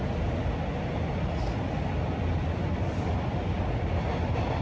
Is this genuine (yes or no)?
yes